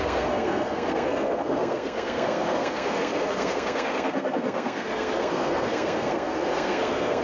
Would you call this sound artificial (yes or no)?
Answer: yes